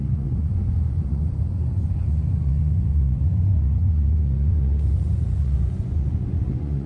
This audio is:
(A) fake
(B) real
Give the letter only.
A